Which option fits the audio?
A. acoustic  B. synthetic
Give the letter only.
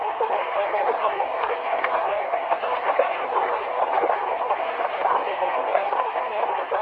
B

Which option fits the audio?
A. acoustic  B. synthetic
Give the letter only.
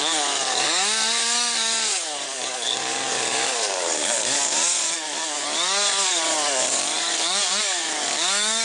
B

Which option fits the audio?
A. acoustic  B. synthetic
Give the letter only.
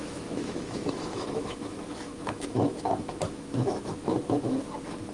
B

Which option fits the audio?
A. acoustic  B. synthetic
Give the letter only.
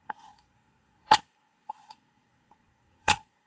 B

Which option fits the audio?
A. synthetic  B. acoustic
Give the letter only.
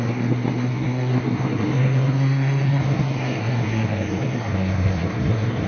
A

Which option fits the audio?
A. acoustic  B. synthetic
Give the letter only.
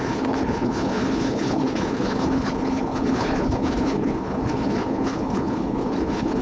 B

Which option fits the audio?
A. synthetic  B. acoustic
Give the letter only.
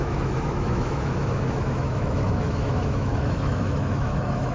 A